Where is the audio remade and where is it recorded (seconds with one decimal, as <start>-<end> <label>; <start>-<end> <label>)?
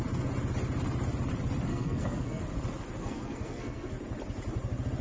0.0-1.7 recorded; 1.7-2.4 remade; 2.4-3.0 recorded; 3.0-3.9 remade; 3.9-5.0 recorded